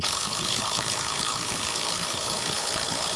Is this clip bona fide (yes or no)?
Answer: no